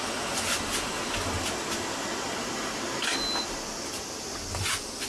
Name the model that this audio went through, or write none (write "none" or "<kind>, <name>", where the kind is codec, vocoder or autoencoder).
none